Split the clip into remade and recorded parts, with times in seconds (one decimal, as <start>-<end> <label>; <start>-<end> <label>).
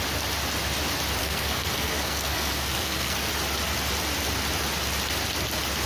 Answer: 0.0-1.2 recorded; 1.2-3.3 remade; 3.3-5.9 recorded